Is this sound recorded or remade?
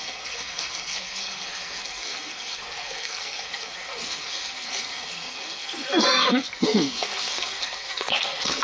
remade